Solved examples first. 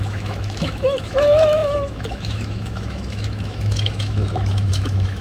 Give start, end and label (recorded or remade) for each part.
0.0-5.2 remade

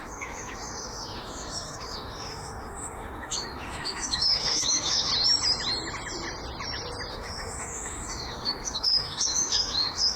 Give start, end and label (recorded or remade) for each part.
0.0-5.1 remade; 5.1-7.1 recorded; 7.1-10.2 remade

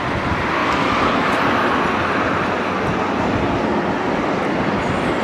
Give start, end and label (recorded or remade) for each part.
0.0-0.6 recorded; 0.6-1.4 remade; 1.4-5.2 recorded

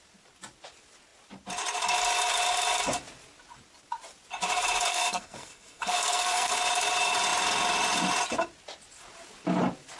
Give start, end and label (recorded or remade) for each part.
0.0-4.9 recorded; 4.9-6.5 remade; 6.5-10.0 recorded

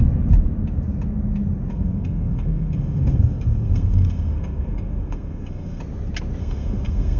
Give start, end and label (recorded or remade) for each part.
0.0-1.7 recorded; 1.7-5.8 remade; 5.8-6.4 recorded; 6.4-7.2 remade